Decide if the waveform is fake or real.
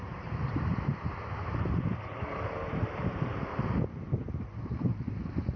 fake